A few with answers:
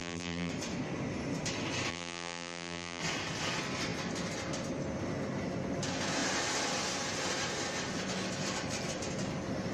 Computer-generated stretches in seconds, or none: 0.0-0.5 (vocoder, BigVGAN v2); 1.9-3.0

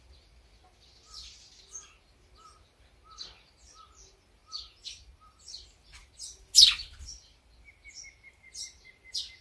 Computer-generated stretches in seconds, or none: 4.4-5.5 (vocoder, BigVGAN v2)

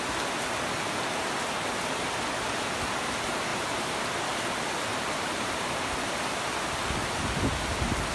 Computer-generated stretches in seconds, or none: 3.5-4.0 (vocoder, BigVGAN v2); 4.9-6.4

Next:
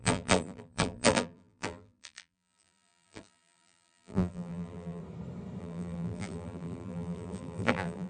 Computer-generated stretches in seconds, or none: 0.0-5.0 (vocoder, BigVGAN v2); 5.6-8.1

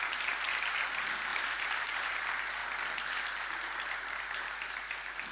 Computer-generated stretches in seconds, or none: 1.3-2.2 (vocoder, BigVGAN v2)